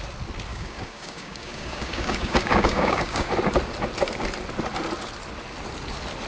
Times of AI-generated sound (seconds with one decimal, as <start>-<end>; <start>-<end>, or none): 0.5-3.3